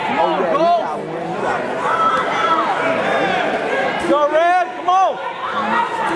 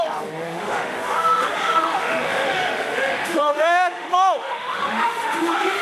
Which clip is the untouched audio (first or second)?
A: first